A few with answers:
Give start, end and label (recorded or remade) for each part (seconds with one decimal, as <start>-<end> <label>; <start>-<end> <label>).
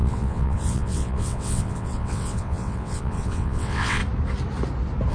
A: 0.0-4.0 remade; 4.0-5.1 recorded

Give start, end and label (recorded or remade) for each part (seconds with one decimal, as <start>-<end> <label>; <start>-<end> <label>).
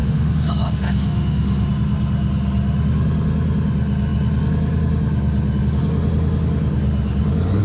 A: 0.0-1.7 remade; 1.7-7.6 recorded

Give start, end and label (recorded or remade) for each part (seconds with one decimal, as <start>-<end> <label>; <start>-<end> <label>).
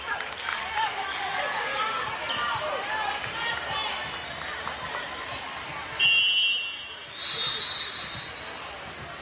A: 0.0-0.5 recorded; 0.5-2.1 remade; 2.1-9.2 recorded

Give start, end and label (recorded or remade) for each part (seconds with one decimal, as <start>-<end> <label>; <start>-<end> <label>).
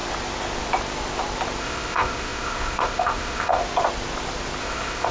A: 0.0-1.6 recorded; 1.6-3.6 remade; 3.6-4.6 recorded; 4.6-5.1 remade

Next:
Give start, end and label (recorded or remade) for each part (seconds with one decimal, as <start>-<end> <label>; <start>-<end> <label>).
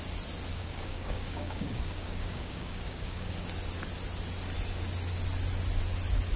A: 0.0-0.5 recorded; 0.5-3.3 remade; 3.3-6.4 recorded